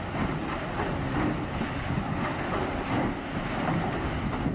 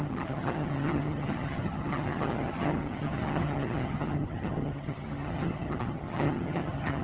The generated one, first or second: second